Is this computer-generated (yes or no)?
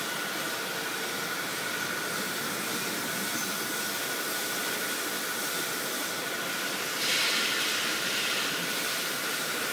no